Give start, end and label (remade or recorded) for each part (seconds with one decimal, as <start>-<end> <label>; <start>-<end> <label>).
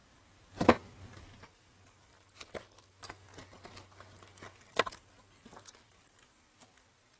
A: 0.0-7.2 recorded